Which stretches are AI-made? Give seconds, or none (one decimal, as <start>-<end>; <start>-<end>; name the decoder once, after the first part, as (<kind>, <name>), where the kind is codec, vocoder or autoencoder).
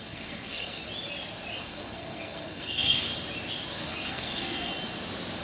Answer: 0.0-0.8 (codec, SNAC); 1.6-3.1; 3.8-4.7